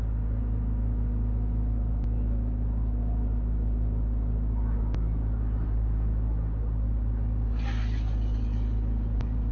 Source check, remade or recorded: recorded